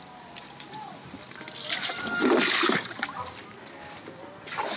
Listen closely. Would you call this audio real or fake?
real